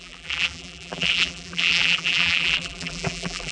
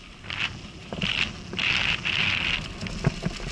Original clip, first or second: second